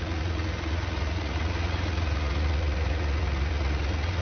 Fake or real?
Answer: fake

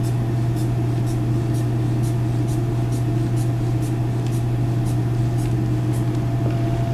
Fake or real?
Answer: real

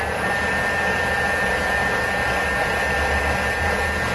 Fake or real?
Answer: fake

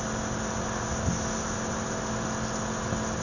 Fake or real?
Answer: real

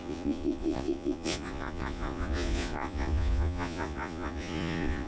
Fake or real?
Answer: fake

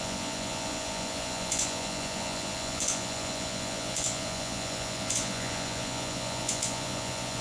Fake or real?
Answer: fake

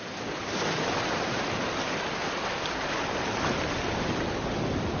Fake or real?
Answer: real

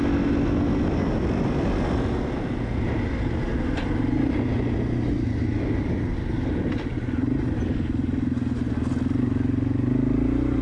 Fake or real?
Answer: real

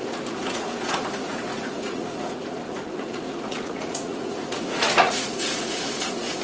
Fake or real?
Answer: fake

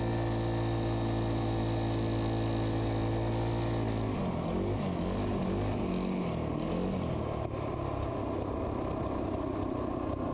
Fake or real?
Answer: real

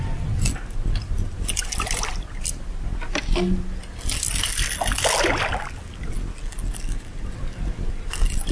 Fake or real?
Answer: real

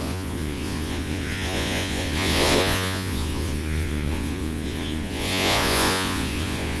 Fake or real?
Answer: fake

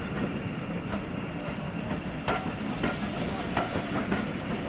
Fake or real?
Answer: real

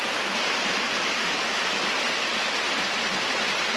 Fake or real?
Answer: real